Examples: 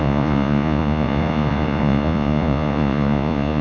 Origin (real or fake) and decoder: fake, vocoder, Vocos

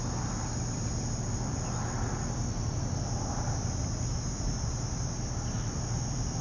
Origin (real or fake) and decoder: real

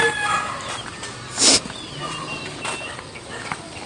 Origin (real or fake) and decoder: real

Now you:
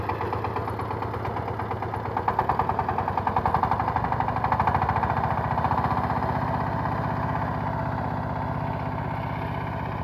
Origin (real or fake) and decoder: real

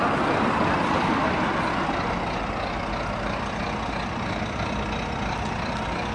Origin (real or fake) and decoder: real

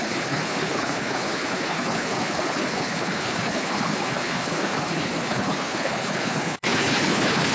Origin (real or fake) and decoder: fake, codec, HILCodec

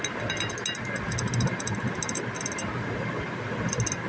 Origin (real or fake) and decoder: real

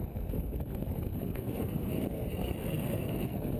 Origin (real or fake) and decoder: fake, codec, SNAC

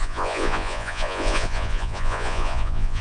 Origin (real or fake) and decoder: fake, vocoder, Vocos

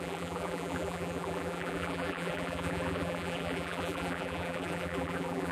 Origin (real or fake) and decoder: fake, vocoder, BigVGAN v2